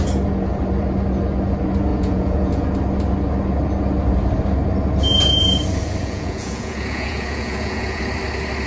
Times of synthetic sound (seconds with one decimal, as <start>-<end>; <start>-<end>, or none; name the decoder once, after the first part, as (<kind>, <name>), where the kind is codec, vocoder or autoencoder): 1.9-2.7 (vocoder, Vocos); 6.0-8.0